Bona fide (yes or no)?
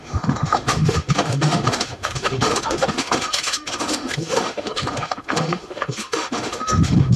no